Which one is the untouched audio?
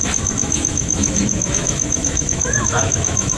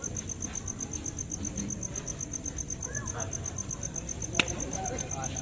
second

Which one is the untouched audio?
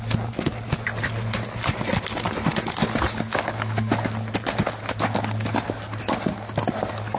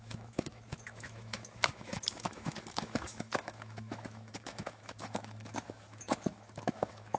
first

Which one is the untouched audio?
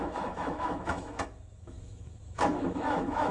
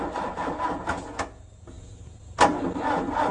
second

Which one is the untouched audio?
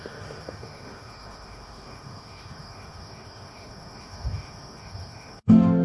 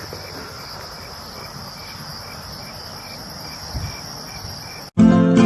second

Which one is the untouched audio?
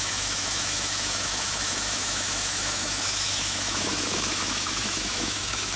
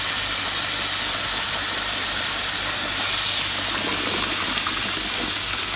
second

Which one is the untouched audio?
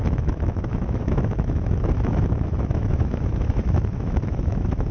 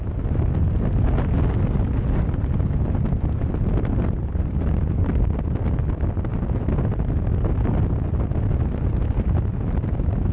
second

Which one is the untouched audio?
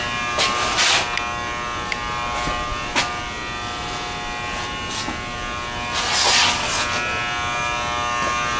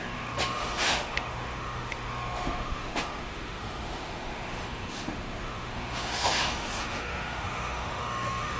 first